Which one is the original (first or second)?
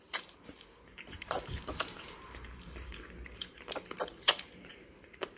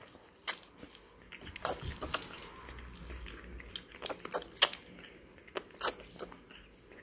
second